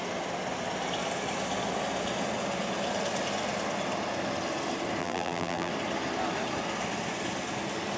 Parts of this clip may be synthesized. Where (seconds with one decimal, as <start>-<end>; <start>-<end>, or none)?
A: 5.0-5.7